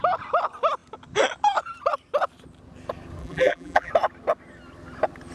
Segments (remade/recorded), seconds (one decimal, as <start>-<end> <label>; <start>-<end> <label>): 0.0-3.2 recorded; 3.2-3.9 remade; 3.9-5.3 recorded